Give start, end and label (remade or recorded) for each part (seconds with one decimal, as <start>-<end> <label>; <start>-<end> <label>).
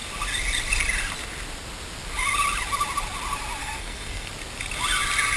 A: 0.0-3.6 recorded; 3.6-4.3 remade; 4.3-5.4 recorded